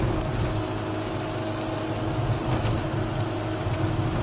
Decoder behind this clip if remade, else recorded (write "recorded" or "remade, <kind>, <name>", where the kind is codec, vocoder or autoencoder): recorded